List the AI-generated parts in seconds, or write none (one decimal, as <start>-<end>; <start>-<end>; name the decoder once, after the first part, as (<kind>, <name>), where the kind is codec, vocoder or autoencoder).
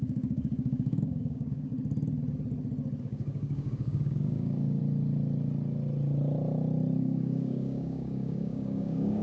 0.0-1.7 (codec, DAC); 3.0-4.8; 7.0-9.2